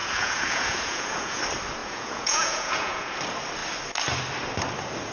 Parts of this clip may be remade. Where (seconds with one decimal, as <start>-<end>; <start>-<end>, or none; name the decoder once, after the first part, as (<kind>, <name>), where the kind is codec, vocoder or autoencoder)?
0.0-1.4 (vocoder, Vocos); 1.8-3.2